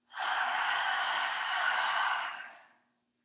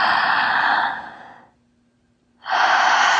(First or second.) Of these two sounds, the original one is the second